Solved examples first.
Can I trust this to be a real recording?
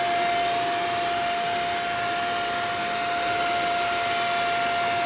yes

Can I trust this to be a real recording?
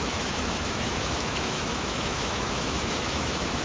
no